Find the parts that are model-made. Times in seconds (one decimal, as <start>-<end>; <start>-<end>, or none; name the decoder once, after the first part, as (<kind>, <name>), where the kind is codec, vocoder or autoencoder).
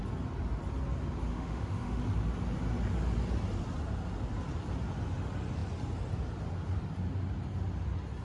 1.3-2.0 (autoencoder, DAC-VAE)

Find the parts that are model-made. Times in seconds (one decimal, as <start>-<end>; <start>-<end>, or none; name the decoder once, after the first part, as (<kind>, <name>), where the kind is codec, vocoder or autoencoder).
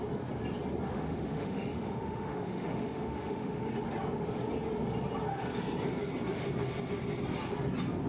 0.9-3.7 (autoencoder, DAC-VAE)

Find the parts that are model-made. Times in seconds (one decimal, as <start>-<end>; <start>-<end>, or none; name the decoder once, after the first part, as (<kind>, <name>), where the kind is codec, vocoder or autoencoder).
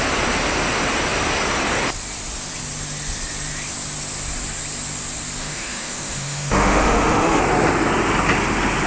5.4-7.4 (autoencoder, DAC-VAE)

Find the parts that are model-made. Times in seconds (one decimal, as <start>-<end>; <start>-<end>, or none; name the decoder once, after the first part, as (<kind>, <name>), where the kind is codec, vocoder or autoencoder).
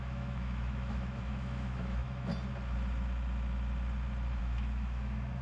0.0-2.3 (autoencoder, DAC-VAE); 4.4-5.4